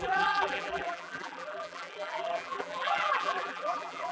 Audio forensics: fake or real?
fake